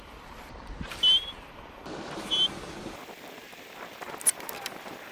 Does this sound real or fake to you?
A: real